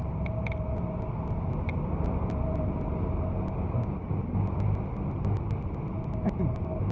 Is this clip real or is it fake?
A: real